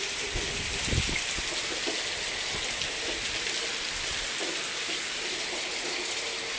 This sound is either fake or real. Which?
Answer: real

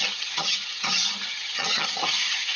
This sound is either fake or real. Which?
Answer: fake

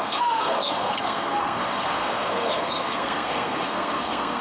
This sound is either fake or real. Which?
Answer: fake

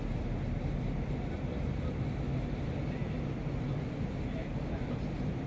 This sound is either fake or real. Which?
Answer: real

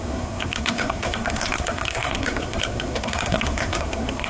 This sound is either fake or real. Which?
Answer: fake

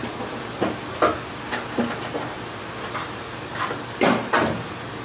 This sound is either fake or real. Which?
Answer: real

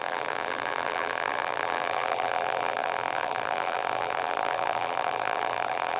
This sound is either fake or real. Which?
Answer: fake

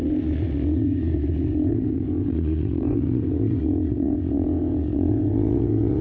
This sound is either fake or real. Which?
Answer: fake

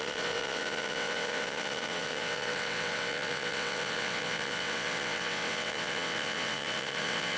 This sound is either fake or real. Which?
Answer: fake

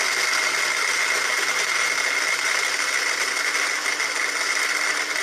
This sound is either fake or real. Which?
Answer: real